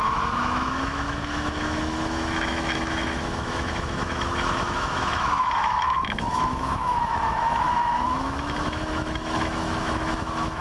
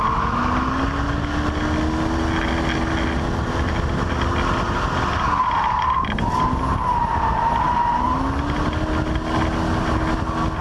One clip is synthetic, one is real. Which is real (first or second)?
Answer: second